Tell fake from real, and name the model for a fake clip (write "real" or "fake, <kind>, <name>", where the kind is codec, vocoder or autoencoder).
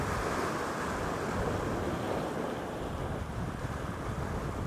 real